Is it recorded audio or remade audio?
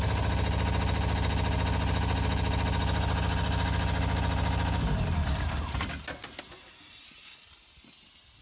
recorded